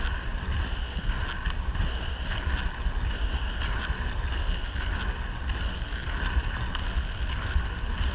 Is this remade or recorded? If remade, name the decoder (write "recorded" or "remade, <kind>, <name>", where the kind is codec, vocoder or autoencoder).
recorded